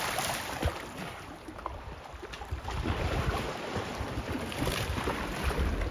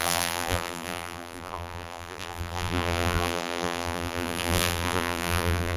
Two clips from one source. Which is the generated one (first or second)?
second